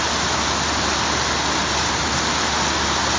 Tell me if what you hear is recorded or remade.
recorded